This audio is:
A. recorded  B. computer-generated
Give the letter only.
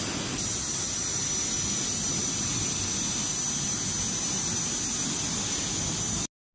A